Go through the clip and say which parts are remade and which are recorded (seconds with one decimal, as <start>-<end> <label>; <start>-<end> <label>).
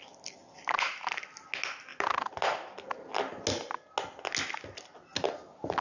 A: 0.0-5.8 recorded